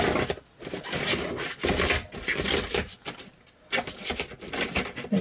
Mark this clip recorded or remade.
recorded